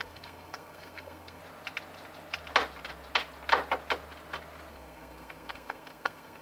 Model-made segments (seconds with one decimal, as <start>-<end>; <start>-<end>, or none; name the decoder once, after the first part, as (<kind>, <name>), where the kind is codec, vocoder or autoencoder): 0.0-1.4 (codec, SNAC); 4.7-6.4